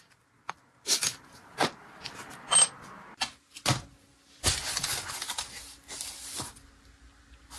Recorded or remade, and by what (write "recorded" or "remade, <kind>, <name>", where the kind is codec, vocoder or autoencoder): recorded